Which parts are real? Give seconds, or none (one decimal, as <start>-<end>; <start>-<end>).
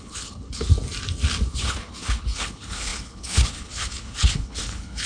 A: 0.7-1.5